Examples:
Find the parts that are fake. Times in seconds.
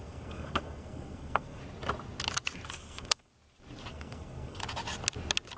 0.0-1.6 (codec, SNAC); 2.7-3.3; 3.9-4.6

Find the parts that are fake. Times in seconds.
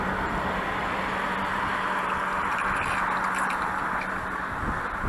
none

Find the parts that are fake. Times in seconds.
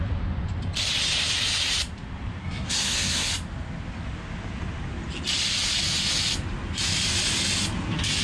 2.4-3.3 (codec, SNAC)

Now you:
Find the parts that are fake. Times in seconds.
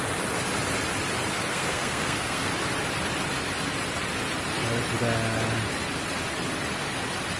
1.5-2.5 (codec, SNAC)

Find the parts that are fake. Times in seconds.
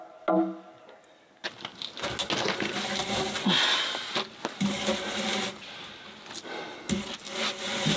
none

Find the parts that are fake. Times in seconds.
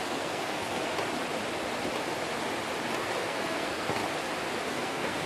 0.0-0.9 (codec, SNAC); 3.0-4.0; 4.7-5.3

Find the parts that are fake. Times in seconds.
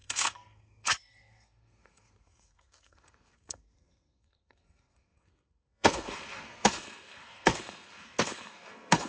0.0-9.1 (codec, SNAC)